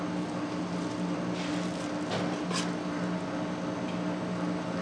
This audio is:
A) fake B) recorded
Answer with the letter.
B